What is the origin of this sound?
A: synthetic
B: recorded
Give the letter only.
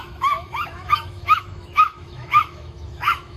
A